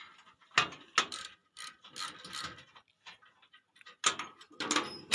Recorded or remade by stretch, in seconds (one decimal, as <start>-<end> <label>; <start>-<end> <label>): 0.0-5.1 recorded